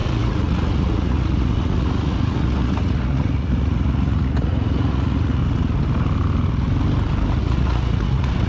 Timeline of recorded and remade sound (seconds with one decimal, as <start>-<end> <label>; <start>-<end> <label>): 0.0-5.4 remade; 5.4-7.4 recorded; 7.4-8.5 remade

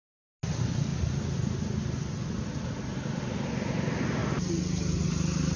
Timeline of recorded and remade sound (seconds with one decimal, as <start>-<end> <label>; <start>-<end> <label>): 0.0-5.6 recorded